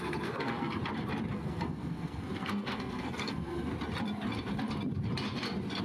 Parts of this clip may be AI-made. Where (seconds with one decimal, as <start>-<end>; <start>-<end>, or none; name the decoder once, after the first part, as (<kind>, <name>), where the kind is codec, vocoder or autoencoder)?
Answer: 0.0-0.8 (codec, SNAC); 1.3-3.7